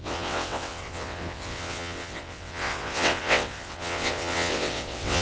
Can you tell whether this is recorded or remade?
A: remade